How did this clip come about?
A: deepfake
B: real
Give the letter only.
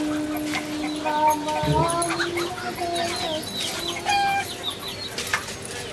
B